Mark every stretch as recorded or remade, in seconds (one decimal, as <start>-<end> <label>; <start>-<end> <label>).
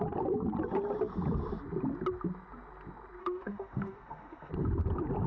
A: 0.0-3.2 recorded; 3.2-4.5 remade; 4.5-5.3 recorded